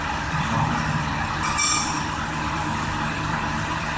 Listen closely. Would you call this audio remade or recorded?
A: remade